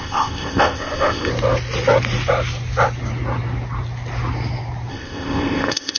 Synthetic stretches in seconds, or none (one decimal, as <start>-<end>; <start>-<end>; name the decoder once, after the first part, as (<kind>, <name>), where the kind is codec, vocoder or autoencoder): 0.0-1.3 (codec, ZipCodec); 4.9-6.0